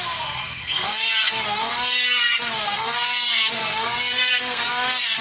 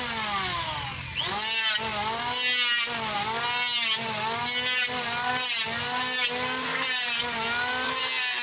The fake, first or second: first